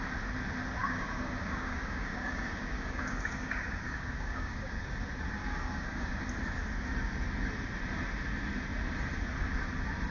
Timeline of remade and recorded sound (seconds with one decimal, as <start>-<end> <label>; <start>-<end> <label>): 0.0-0.8 recorded; 0.8-4.9 remade; 4.9-5.4 recorded; 5.4-6.1 remade; 6.1-10.1 recorded